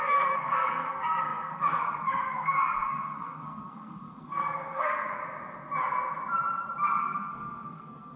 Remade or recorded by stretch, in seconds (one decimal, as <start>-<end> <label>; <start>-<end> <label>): 0.0-5.2 remade; 5.2-7.0 recorded; 7.0-8.2 remade